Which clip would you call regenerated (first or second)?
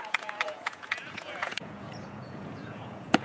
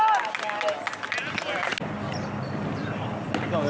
first